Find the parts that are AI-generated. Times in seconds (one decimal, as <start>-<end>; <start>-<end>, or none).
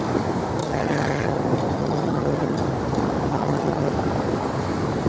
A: 0.6-1.4; 1.8-2.6; 3.3-3.9